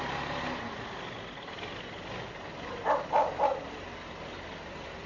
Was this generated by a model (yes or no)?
no